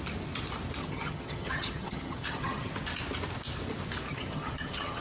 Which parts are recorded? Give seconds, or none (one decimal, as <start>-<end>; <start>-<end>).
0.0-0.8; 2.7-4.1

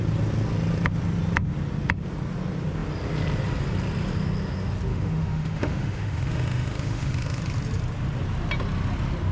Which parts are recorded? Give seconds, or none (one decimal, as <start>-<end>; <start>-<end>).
0.0-4.9; 7.4-9.3

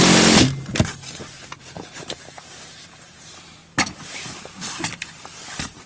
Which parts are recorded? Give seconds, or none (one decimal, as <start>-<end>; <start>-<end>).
0.0-1.6; 3.6-4.4

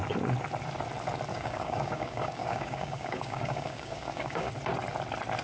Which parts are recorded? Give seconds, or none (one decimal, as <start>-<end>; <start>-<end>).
0.0-1.3; 4.5-5.4

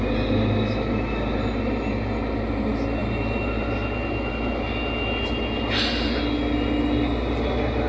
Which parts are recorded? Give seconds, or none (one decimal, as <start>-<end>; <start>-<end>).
0.0-7.9

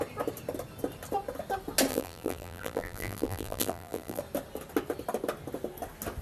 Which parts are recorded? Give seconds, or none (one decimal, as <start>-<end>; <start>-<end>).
0.0-1.9; 4.2-6.2